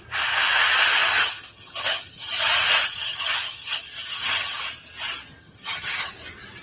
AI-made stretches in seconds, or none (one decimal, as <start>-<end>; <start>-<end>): 1.0-2.4; 2.8-4.6; 5.4-6.1